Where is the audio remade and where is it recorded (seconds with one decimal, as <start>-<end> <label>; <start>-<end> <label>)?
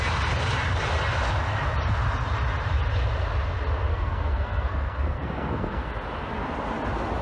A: 0.0-3.9 recorded; 3.9-5.9 remade; 5.9-7.2 recorded